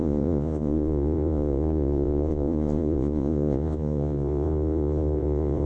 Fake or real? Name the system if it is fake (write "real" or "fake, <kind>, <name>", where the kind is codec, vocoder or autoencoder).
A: fake, vocoder, Vocos